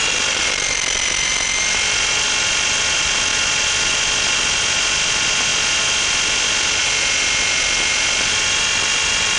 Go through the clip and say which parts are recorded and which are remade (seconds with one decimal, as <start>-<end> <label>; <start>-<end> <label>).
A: 0.0-3.3 remade; 3.3-3.9 recorded; 3.9-5.5 remade; 5.5-8.3 recorded; 8.3-9.4 remade

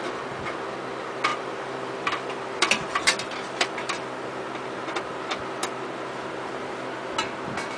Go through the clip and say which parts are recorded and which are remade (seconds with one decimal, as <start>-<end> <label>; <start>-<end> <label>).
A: 0.0-1.3 recorded; 1.3-5.0 remade; 5.0-7.8 recorded

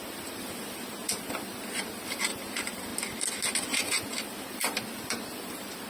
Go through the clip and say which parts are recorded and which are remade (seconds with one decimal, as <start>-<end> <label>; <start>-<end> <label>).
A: 0.0-2.9 remade; 2.9-4.5 recorded; 4.5-5.9 remade